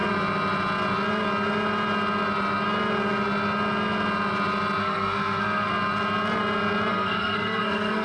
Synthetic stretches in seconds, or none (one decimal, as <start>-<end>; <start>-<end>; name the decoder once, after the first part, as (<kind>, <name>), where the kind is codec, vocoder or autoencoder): 4.8-5.7 (codec, SNAC); 6.9-8.0